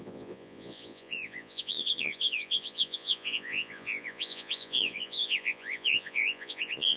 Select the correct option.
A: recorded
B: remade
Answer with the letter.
B